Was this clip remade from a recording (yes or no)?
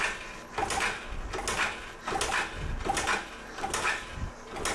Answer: no